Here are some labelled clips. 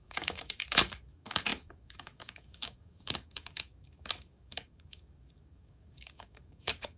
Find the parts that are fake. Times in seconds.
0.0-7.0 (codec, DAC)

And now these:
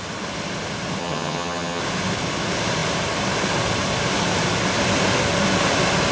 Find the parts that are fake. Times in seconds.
1.0-1.8 (vocoder, HiFi-GAN)

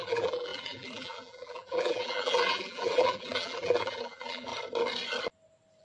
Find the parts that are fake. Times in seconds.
0.0-4.5 (vocoder, BigVGAN v2)

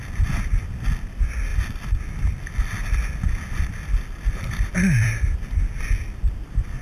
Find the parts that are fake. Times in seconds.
none

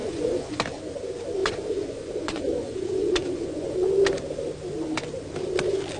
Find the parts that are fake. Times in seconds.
0.0-0.6 (vocoder, Vocos); 1.4-3.9